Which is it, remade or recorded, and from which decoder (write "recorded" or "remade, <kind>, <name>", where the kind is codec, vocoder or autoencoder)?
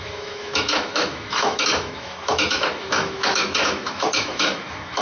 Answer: remade, autoencoder, DAC-VAE